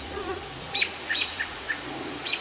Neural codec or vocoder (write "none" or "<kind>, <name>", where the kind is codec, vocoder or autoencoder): vocoder, Vocos